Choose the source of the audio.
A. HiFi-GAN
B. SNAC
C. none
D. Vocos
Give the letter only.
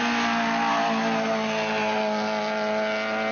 C